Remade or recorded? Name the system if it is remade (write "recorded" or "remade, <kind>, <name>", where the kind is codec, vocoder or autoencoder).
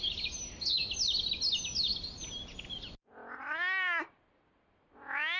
recorded